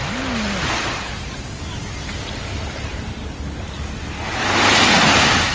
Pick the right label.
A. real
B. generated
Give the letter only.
A